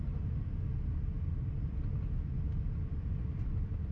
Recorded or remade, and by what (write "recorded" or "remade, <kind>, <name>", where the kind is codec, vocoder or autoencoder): recorded